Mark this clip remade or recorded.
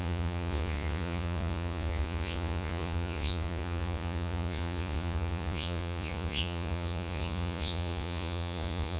remade